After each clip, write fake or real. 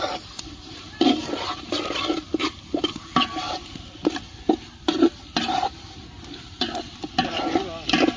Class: real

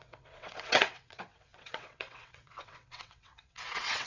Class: fake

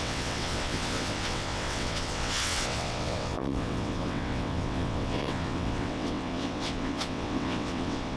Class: fake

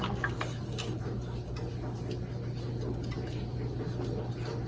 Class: real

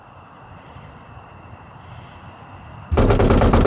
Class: real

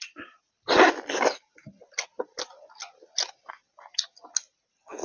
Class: real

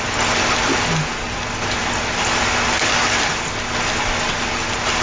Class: real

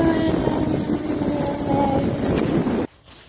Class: real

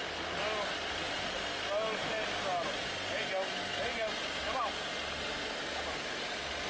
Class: real